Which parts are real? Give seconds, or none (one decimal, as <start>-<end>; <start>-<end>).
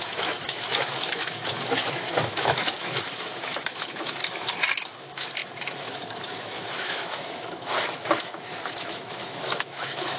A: 4.2-5.0